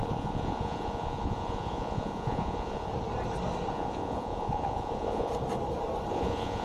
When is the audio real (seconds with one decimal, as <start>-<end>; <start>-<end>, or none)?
2.9-3.7; 5.3-6.1